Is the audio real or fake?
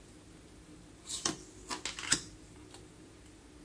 real